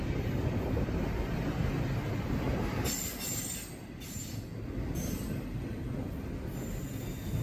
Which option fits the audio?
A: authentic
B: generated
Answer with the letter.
A